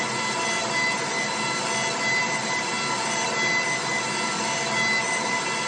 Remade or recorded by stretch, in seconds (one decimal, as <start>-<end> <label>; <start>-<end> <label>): 0.0-5.7 recorded